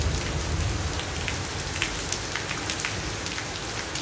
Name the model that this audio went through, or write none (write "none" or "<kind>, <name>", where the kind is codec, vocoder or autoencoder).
none